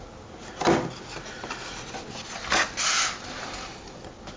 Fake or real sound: real